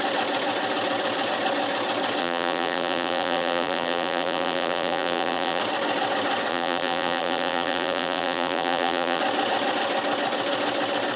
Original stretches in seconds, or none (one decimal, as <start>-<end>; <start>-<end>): 0.0-2.2; 5.6-6.5; 9.2-11.2